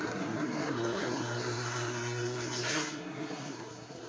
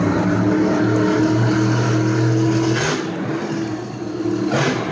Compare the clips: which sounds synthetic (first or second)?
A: first